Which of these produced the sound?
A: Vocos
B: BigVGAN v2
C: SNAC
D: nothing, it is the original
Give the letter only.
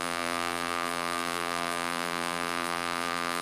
B